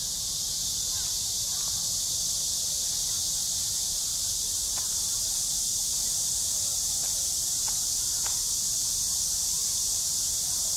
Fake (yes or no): yes